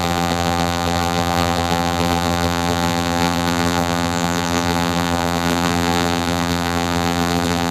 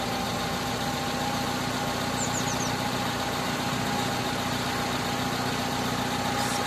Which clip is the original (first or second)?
second